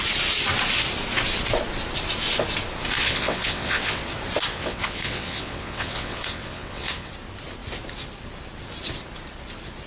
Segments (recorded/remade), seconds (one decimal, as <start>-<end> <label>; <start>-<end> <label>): 0.0-3.0 recorded; 3.0-4.0 remade; 4.0-4.5 recorded; 4.5-7.1 remade; 7.1-9.9 recorded